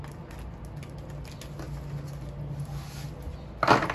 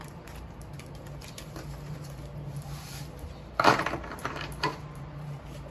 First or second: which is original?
first